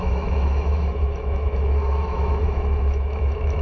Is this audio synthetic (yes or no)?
yes